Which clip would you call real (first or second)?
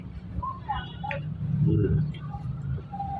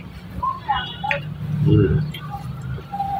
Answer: second